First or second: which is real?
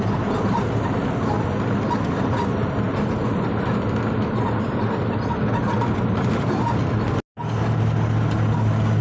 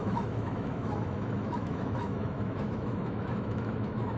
first